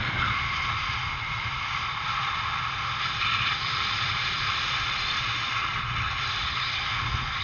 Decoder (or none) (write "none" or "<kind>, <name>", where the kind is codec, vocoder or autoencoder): none